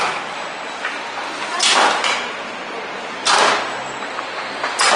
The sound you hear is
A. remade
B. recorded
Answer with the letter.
B